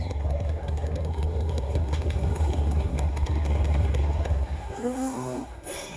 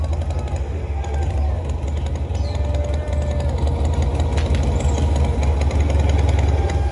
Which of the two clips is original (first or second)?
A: second